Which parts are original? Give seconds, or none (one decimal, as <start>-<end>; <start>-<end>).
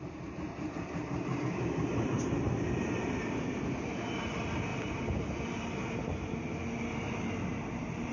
0.0-0.5; 1.4-8.1